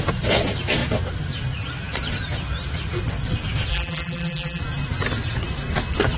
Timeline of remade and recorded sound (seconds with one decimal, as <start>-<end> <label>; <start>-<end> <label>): 0.0-3.7 recorded; 3.7-4.6 remade; 4.6-6.2 recorded